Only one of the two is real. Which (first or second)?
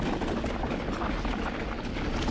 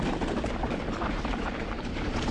first